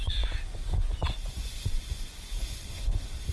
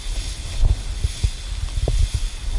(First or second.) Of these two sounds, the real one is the second